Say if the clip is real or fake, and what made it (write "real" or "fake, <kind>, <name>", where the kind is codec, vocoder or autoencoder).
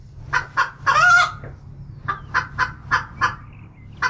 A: real